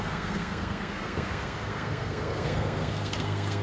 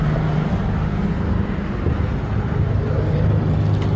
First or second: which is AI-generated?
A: first